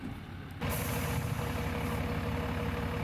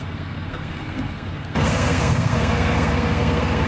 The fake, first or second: second